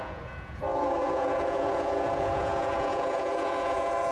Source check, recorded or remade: remade